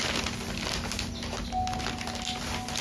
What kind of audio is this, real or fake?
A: real